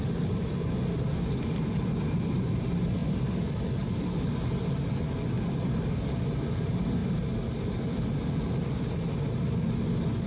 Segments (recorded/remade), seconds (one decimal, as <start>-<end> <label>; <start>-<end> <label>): 0.0-10.3 recorded